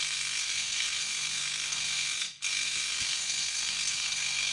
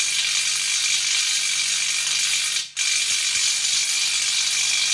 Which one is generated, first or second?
first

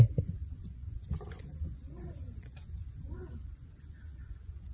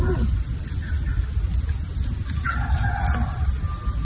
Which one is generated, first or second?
first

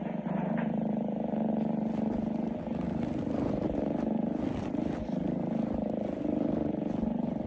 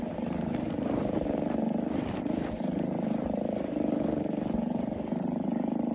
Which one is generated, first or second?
second